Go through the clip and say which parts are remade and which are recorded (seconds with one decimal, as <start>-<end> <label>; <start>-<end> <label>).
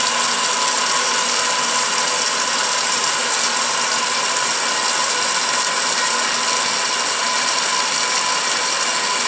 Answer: 0.0-9.3 recorded